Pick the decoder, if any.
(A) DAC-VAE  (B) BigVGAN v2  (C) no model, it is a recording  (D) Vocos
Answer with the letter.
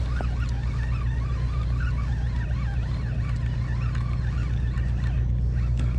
C